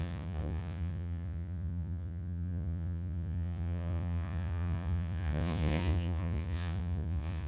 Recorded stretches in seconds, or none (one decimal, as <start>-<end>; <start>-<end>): none